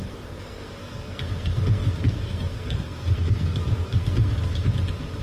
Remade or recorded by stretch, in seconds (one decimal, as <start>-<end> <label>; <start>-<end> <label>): 0.0-4.6 remade; 4.6-5.2 recorded